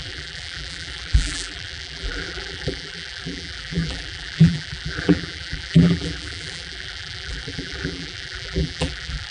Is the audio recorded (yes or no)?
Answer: no